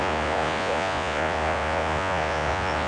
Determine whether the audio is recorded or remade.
remade